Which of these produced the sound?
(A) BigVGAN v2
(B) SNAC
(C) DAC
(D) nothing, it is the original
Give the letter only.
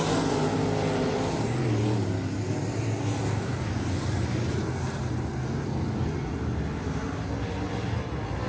D